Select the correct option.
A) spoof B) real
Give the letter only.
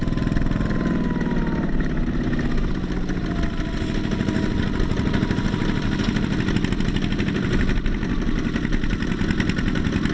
B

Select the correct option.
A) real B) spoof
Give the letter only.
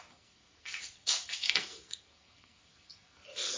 B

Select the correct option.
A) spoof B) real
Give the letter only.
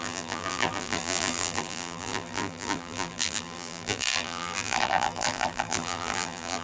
A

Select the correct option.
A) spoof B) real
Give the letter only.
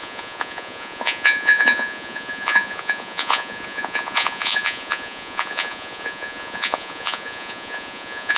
A